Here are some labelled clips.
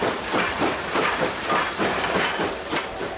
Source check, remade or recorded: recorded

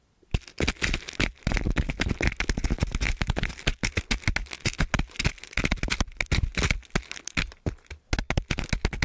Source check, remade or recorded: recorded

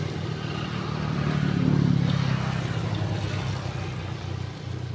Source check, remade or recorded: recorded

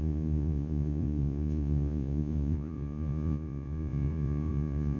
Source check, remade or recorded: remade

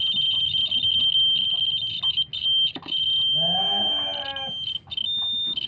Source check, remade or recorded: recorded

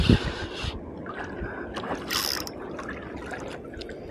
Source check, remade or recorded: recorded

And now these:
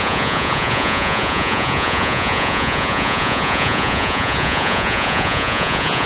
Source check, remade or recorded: remade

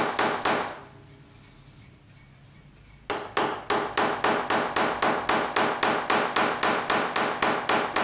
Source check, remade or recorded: recorded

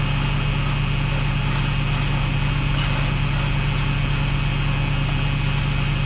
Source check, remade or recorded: recorded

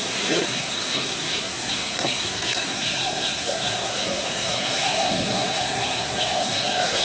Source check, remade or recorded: remade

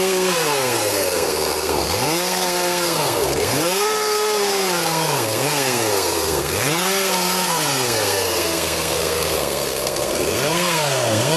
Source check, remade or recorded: remade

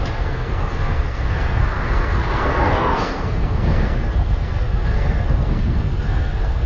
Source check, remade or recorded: remade